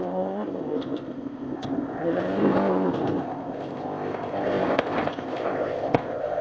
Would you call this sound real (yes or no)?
no